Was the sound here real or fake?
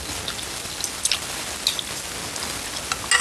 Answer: real